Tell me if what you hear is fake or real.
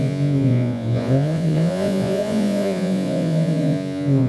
fake